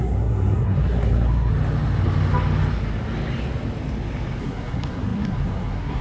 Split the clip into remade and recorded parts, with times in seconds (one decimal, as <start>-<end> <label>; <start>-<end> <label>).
0.0-1.5 remade; 1.5-4.4 recorded; 4.4-6.0 remade